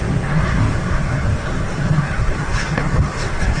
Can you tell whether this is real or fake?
fake